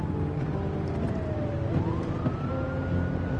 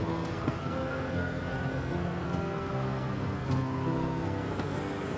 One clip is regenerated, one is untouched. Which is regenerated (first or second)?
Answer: second